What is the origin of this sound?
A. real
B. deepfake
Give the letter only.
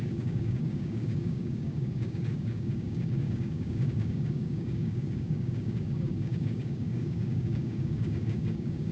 B